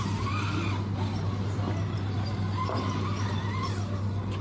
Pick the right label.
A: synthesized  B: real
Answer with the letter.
B